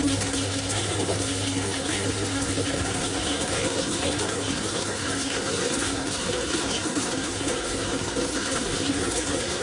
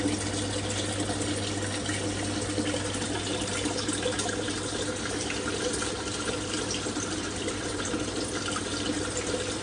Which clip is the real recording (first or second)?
second